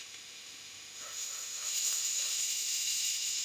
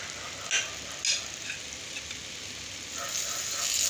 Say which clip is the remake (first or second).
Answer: first